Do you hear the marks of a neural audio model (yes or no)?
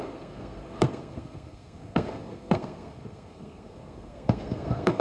yes